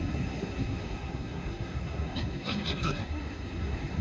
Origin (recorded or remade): remade